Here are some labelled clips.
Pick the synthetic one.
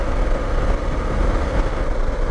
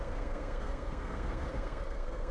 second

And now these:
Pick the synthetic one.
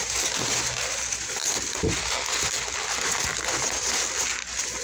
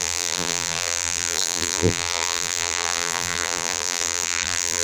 second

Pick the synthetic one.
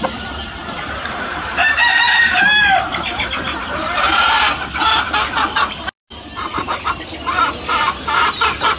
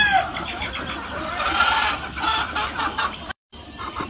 second